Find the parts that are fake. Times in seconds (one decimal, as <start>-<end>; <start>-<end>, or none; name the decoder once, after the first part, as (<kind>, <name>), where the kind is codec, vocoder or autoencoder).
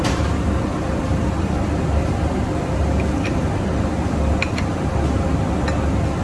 0.7-4.4 (vocoder, BigVGAN v2)